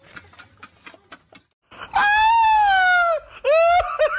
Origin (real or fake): real